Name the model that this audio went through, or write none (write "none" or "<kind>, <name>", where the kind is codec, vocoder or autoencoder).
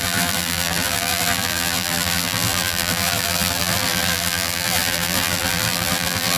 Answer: vocoder, BigVGAN v2